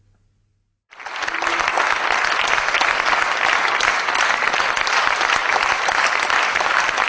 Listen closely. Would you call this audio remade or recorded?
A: recorded